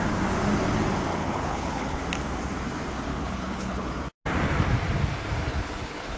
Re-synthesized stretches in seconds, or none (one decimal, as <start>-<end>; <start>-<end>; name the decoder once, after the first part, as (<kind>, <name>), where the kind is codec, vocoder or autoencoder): 1.1-2.0 (codec, HILCodec); 3.1-3.9; 5.5-6.2